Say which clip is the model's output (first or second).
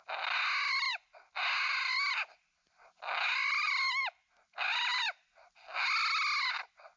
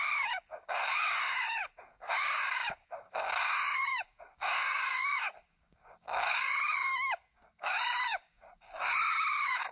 second